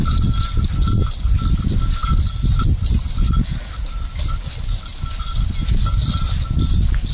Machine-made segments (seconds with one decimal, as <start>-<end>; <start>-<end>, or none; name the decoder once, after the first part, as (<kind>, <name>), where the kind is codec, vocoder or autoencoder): none